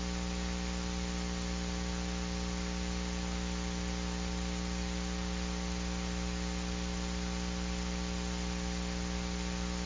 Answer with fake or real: real